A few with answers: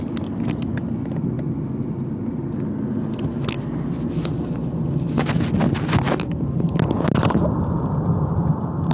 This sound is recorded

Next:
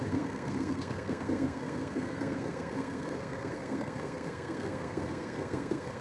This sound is remade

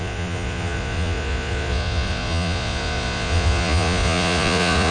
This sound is remade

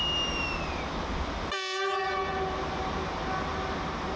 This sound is recorded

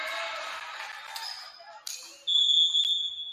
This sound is recorded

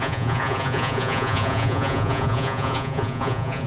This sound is remade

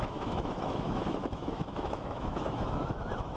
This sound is remade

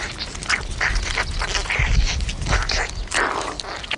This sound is recorded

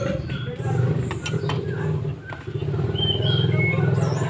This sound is recorded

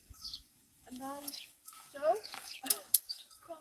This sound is remade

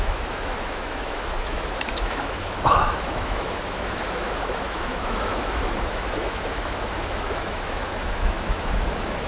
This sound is remade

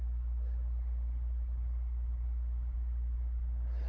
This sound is recorded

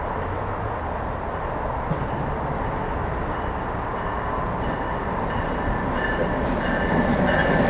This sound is recorded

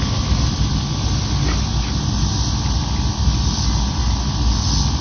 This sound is recorded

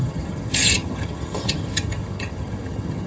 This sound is remade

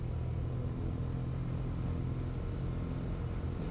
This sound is recorded